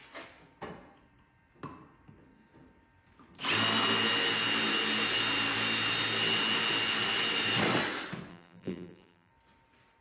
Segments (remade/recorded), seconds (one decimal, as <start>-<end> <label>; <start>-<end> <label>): 0.0-8.3 recorded; 8.3-9.3 remade; 9.3-10.0 recorded